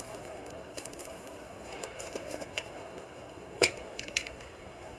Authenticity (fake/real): fake